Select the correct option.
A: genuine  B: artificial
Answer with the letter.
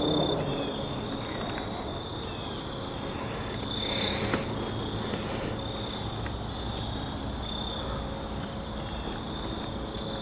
A